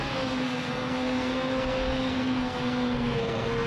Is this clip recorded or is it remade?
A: remade